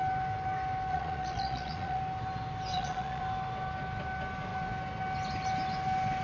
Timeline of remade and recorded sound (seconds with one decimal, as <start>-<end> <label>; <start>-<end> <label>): 0.0-0.9 recorded; 0.9-2.0 remade; 2.0-2.7 recorded; 2.7-3.2 remade; 3.2-6.2 recorded